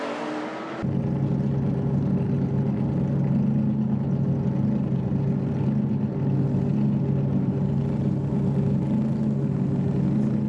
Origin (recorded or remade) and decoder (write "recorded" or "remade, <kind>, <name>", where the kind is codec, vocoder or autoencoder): recorded